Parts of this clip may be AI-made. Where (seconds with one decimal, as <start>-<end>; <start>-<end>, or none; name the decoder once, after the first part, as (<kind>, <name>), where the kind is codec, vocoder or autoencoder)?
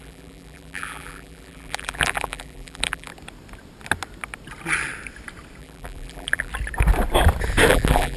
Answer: 0.0-3.1 (vocoder, BigVGAN v2); 5.6-6.5; 7.7-8.2